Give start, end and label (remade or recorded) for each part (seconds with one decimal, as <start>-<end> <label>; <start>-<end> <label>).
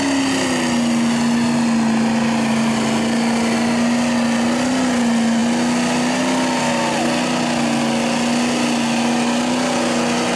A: 0.0-10.4 recorded